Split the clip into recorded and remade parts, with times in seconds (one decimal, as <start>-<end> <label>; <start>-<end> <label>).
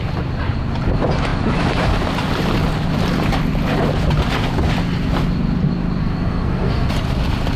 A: 0.0-6.0 recorded; 6.0-6.9 remade; 6.9-7.6 recorded